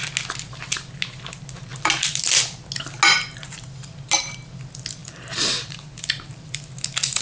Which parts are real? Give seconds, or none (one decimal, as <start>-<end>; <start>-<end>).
0.0-5.0; 6.6-7.2